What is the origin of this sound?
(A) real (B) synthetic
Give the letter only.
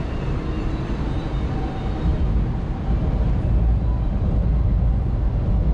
A